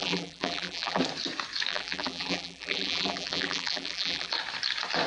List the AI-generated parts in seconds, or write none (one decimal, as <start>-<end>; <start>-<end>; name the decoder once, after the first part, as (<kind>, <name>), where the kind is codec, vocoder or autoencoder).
0.0-1.0 (vocoder, BigVGAN v2); 1.7-4.3